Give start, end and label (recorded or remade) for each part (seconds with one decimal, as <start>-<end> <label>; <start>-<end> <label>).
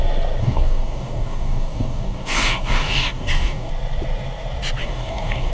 0.0-0.4 recorded; 0.4-3.7 remade; 3.7-4.8 recorded; 4.8-5.5 remade